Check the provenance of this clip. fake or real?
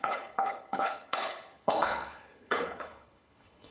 fake